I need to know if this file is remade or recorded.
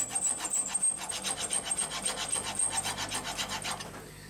recorded